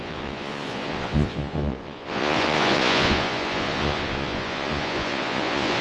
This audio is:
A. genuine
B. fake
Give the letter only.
B